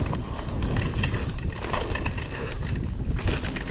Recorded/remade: recorded